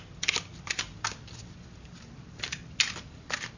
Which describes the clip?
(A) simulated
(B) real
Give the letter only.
B